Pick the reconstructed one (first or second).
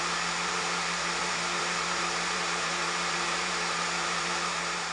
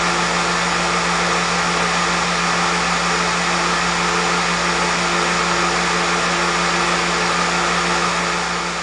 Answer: first